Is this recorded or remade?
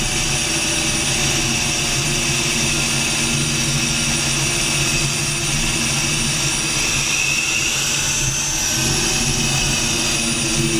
recorded